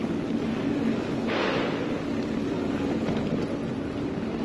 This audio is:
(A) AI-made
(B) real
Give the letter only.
B